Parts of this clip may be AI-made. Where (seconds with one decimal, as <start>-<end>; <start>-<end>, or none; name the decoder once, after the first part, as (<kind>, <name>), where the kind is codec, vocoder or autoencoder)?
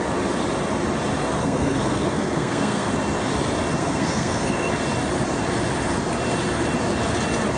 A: 1.4-2.9 (codec, SNAC); 3.8-4.7